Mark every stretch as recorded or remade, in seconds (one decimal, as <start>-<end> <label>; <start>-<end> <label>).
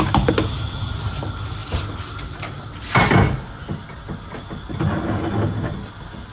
0.0-6.3 recorded